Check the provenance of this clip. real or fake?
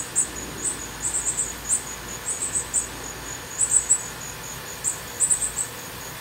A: real